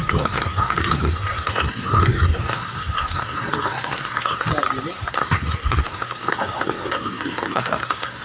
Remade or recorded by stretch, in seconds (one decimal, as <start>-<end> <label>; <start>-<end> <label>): 0.0-4.5 remade; 4.5-5.1 recorded; 5.1-8.2 remade